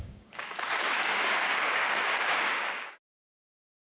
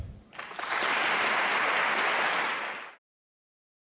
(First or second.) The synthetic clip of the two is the first